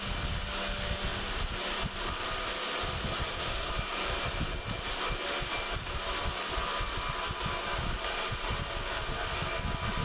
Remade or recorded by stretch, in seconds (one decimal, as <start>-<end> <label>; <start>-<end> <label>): 0.0-3.1 recorded; 3.1-3.7 remade; 3.7-10.0 recorded